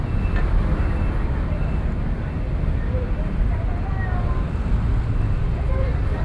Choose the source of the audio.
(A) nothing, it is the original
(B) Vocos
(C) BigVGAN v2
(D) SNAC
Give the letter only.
A